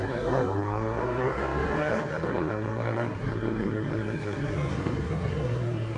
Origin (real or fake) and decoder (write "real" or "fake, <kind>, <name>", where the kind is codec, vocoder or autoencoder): fake, codec, SNAC